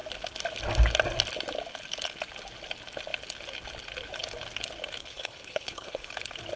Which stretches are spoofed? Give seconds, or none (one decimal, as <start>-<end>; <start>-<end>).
5.0-6.1